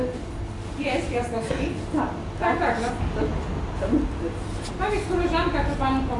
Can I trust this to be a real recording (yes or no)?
yes